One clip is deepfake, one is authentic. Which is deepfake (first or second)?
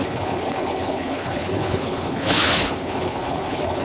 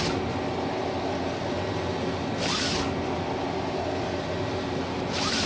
first